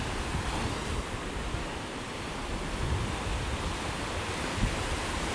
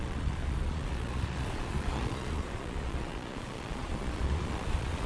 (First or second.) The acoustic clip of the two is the first